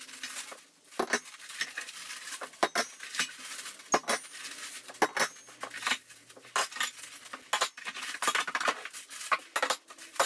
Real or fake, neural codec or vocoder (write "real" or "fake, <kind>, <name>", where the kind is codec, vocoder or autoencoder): real